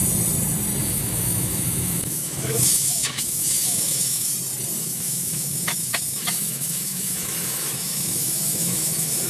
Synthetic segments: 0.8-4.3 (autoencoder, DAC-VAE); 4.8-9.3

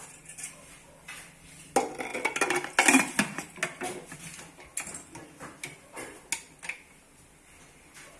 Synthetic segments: none

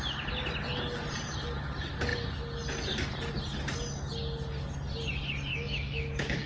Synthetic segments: 5.5-6.5 (autoencoder, DAC-VAE)

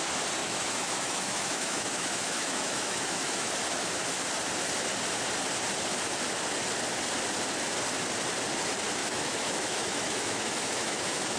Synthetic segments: 0.4-3.5 (autoencoder, DAC-VAE); 9.0-11.4

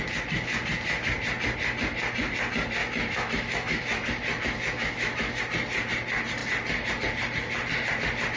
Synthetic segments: 2.8-5.4 (autoencoder, DAC-VAE)